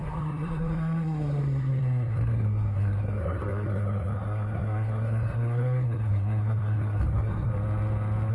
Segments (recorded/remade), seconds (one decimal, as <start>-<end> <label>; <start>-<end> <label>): 0.0-7.5 remade; 7.5-8.3 recorded